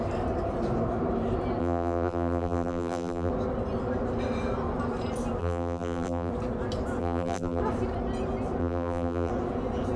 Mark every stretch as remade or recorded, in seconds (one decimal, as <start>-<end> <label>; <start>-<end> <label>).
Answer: 0.0-1.6 recorded; 1.6-3.3 remade; 3.3-5.4 recorded; 5.4-6.3 remade; 6.3-7.0 recorded; 7.0-7.6 remade; 7.6-8.6 recorded; 8.6-9.3 remade; 9.3-10.0 recorded